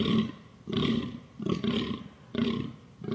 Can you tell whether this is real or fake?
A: real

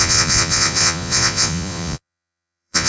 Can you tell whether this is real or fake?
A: fake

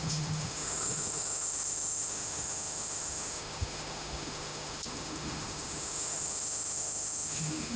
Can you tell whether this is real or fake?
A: fake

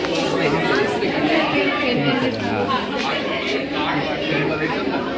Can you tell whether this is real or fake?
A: real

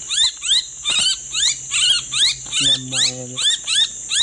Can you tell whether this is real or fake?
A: real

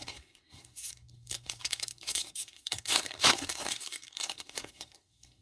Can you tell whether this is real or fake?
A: fake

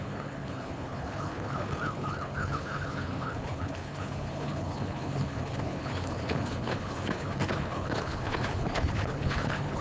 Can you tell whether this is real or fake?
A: fake